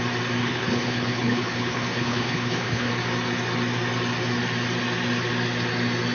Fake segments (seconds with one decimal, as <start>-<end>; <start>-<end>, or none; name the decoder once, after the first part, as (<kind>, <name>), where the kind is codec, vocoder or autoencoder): 0.4-2.9 (codec, HILCodec)